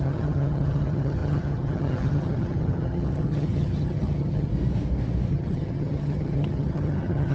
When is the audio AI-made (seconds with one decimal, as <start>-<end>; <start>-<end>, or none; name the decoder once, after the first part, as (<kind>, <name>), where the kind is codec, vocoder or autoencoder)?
0.0-4.5 (vocoder, HiFi-GAN); 5.3-7.3